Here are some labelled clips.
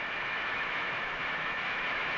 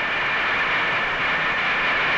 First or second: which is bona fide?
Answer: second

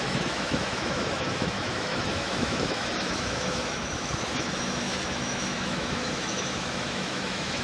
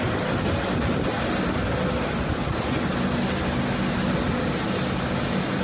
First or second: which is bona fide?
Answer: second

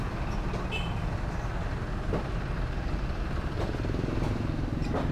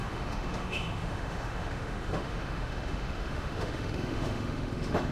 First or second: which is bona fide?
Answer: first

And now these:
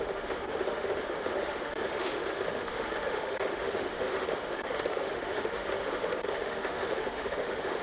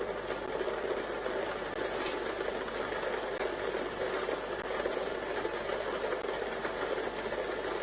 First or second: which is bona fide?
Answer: second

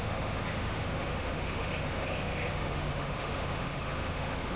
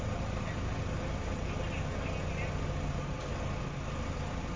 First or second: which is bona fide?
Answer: second